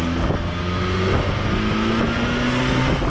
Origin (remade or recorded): recorded